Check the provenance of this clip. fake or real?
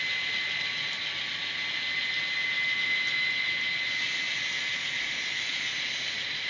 real